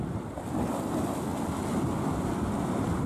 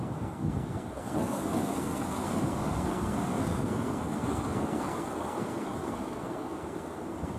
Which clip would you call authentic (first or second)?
first